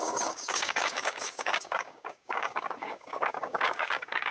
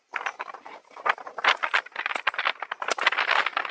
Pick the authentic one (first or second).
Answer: second